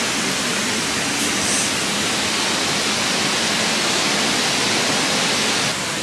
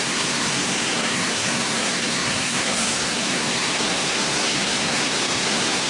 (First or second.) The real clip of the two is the first